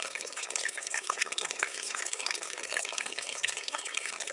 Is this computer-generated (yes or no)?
yes